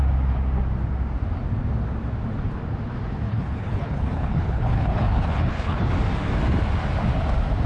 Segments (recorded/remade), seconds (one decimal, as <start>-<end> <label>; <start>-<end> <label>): 0.0-3.3 recorded; 3.3-5.9 remade; 5.9-7.7 recorded